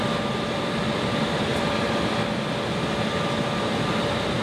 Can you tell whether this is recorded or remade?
recorded